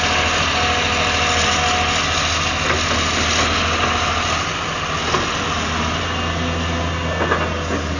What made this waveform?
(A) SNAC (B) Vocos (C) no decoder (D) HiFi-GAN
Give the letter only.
C